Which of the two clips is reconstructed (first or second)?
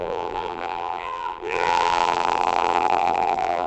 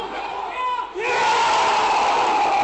first